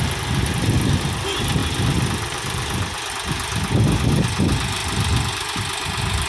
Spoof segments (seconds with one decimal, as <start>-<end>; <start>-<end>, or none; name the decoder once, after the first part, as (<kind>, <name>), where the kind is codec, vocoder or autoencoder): 1.6-3.1 (vocoder, BigVGAN v2); 4.8-5.5